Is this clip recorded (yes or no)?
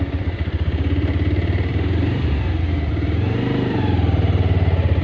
no